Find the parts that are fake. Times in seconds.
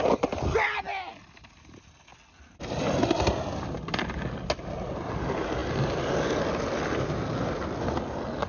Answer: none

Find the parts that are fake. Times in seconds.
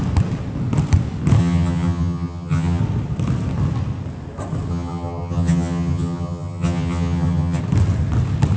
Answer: 1.4-2.8 (vocoder, HiFi-GAN); 4.7-7.6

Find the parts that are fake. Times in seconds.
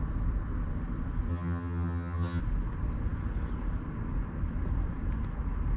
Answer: 1.3-2.4 (vocoder, HiFi-GAN)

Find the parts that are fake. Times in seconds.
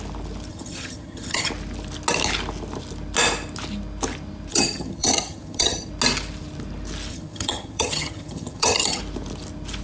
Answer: 0.5-1.5 (vocoder, HiFi-GAN); 4.5-5.9; 7.1-9.0